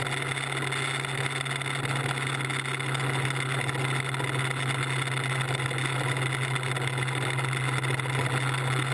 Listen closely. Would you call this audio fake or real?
real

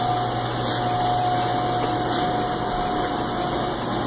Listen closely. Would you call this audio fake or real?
real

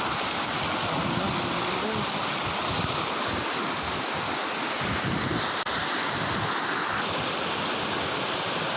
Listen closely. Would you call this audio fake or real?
real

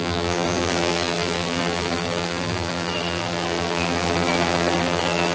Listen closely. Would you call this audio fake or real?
fake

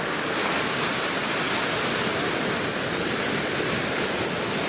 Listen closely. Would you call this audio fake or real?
real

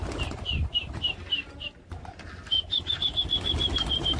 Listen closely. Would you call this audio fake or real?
real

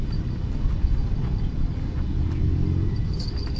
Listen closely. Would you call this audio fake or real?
real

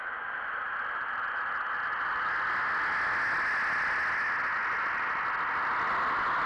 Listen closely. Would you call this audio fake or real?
real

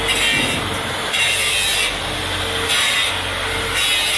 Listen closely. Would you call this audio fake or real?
real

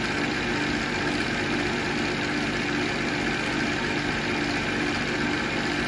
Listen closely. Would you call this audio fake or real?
real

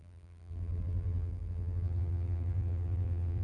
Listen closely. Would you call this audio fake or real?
fake